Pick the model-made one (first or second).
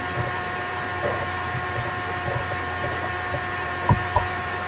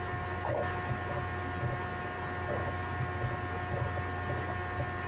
first